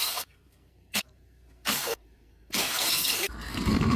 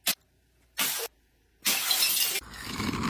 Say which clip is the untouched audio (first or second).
second